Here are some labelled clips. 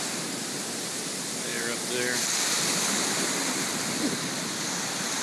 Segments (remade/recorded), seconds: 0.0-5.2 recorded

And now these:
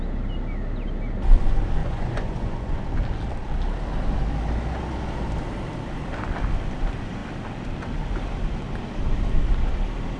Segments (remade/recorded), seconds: 0.0-1.8 recorded; 1.8-2.8 remade; 2.8-10.2 recorded

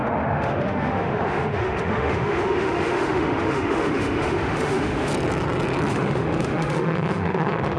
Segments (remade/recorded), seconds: 0.0-5.1 remade; 5.1-5.9 recorded; 5.9-7.8 remade